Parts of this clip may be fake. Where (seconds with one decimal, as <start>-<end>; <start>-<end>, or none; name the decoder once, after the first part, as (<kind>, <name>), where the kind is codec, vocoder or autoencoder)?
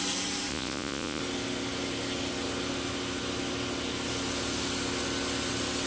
0.5-1.2 (vocoder, Vocos)